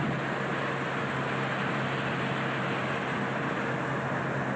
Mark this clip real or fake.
real